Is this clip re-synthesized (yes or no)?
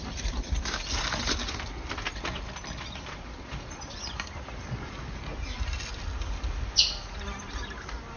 no